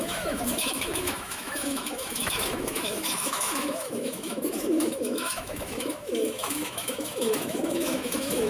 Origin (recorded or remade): remade